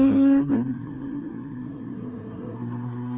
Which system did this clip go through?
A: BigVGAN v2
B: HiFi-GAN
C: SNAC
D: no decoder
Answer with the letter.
C